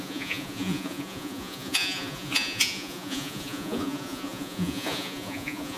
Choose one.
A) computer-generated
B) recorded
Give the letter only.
A